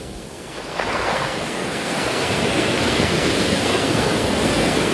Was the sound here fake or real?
fake